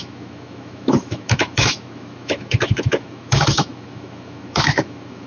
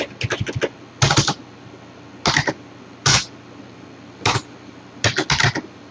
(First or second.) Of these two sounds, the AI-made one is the first